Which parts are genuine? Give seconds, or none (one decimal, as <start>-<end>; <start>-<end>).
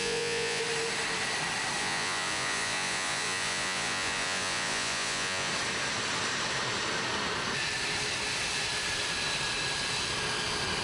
0.6-1.8; 5.5-10.8